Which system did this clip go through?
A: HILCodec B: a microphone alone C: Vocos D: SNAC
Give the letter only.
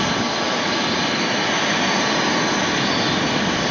B